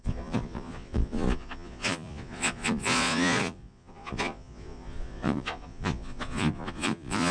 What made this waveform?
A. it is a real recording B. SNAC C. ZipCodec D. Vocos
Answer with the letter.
D